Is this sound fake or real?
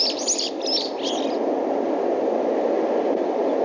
real